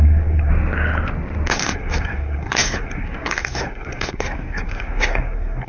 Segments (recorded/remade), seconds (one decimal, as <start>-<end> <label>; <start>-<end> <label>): 0.0-0.5 remade; 0.5-1.5 recorded; 1.5-5.7 remade